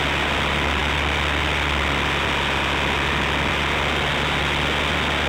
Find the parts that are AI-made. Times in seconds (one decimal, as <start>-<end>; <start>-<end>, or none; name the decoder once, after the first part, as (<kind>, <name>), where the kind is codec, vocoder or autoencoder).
none

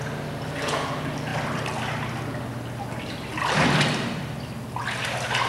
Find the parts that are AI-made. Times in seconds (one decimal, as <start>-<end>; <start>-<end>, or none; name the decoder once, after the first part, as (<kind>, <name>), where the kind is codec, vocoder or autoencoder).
none

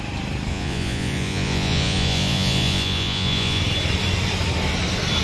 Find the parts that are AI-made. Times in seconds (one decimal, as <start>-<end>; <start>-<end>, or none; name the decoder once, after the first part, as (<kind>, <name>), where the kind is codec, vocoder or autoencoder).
0.5-3.6 (vocoder, Vocos)

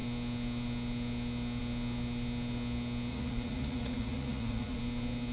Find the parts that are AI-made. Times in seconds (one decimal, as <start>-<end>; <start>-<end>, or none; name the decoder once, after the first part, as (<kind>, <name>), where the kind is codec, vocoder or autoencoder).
3.1-4.8 (vocoder, Vocos)

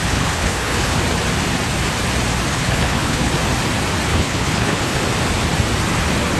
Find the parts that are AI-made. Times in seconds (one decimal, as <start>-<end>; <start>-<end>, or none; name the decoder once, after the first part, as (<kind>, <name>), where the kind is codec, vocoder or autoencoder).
0.0-1.0 (codec, HILCodec); 2.5-3.3; 4.1-5.0

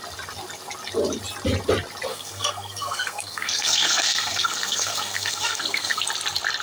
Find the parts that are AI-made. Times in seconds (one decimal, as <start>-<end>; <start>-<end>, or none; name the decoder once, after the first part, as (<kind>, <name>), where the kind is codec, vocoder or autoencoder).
2.1-6.0 (codec, SNAC)